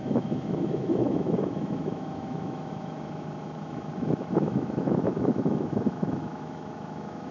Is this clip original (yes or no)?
no